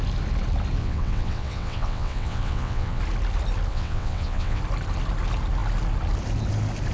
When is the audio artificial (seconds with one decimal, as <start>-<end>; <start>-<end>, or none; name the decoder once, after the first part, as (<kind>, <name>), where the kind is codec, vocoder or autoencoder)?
0.8-3.0 (vocoder, WaveNeXt); 3.7-4.6